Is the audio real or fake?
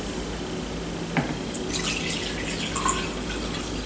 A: real